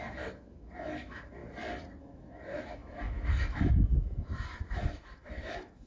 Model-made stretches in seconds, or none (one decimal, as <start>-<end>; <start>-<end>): 0.0-1.4; 2.0-5.9